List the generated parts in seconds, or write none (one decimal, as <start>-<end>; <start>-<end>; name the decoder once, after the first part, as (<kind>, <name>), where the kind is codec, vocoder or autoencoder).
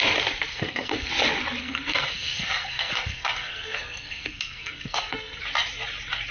0.5-1.1 (codec, SNAC); 1.6-5.4